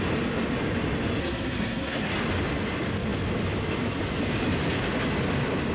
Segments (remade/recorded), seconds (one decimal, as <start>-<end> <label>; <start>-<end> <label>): 0.0-1.2 recorded; 1.2-2.1 remade; 2.1-5.7 recorded